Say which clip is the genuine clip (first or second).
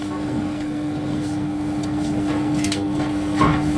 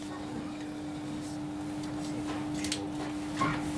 second